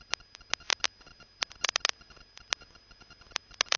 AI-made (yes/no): no